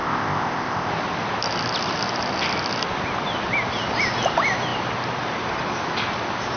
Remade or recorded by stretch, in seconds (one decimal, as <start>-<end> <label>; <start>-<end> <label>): 0.0-0.9 remade; 0.9-6.6 recorded